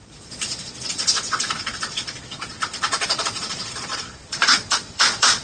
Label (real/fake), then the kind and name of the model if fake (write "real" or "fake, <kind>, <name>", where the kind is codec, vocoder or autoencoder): fake, vocoder, Vocos